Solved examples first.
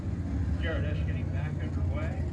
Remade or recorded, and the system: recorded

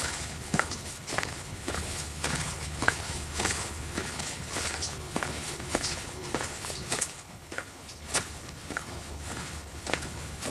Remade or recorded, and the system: remade, codec, HILCodec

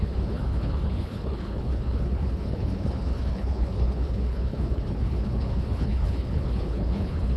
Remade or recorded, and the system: remade, codec, HILCodec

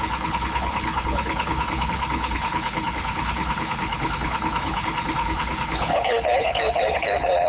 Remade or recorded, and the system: remade, codec, HILCodec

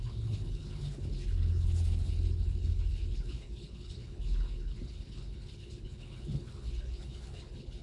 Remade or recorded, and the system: remade, codec, HILCodec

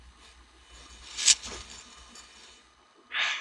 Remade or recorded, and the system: remade, codec, HILCodec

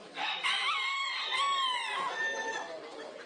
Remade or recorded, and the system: recorded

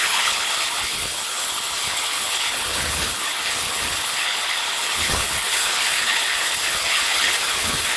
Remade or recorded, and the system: remade, codec, HILCodec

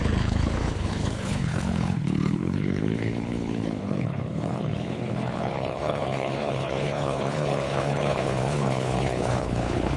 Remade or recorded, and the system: remade, codec, HILCodec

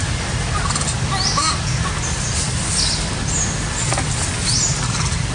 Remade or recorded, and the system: recorded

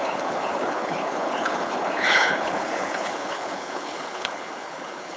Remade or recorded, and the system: remade, codec, HILCodec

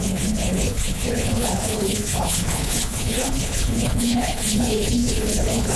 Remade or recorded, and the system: remade, codec, HILCodec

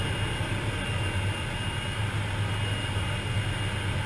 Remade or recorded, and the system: recorded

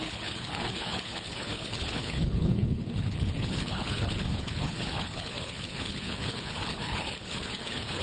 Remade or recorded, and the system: remade, codec, HILCodec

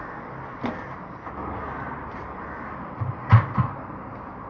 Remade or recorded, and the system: recorded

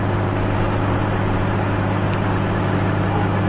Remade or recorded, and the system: recorded